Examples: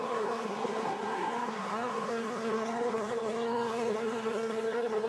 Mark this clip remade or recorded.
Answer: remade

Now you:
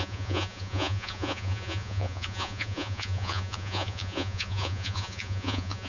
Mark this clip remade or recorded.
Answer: remade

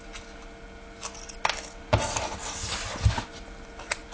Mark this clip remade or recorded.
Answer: recorded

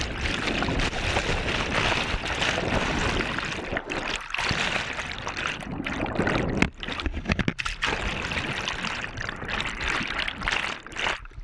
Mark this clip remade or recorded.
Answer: recorded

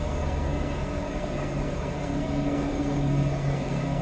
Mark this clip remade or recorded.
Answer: remade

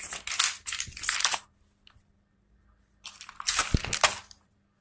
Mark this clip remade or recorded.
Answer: recorded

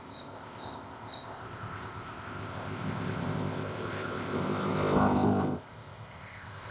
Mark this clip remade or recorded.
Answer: remade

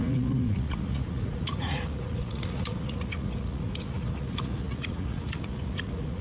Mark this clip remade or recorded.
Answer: remade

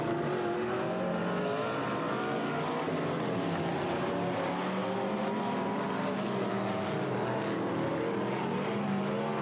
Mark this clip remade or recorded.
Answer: recorded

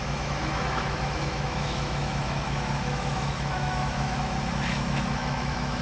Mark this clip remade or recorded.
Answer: remade